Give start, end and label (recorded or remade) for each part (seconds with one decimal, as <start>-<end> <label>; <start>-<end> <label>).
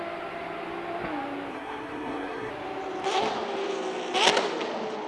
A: 0.0-1.5 recorded; 1.5-2.5 remade; 2.5-5.1 recorded